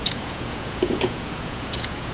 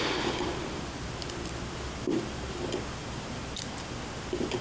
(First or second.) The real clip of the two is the second